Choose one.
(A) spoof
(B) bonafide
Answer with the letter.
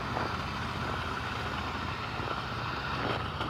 B